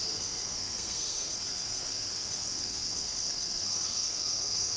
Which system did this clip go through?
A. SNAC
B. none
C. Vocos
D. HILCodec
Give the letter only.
A